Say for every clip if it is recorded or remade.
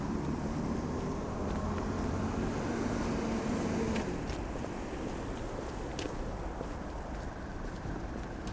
remade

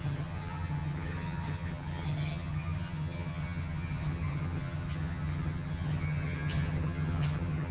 remade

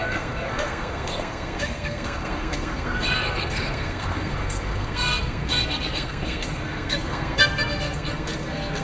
remade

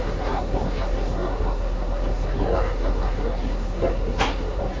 remade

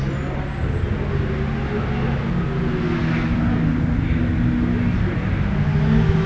recorded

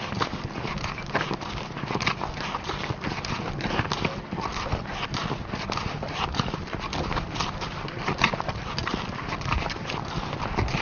recorded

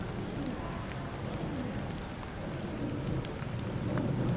recorded